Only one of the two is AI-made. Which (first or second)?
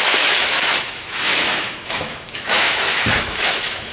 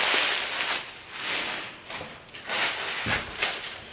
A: first